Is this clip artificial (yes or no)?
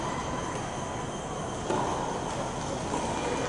no